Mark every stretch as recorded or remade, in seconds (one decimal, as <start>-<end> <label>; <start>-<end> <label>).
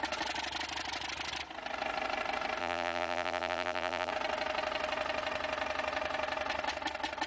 0.0-2.6 recorded; 2.6-4.1 remade; 4.1-7.3 recorded